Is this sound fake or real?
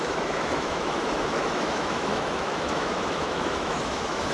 fake